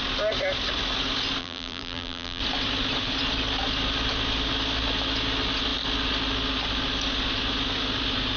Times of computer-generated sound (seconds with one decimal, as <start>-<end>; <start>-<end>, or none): 1.4-2.4